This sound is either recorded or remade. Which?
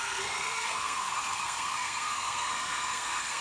remade